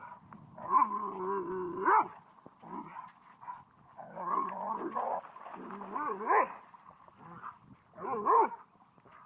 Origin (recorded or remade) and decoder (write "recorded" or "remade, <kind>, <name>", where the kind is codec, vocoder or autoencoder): recorded